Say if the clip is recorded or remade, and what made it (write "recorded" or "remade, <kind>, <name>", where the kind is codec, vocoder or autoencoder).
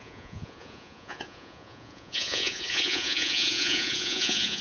remade, vocoder, Vocos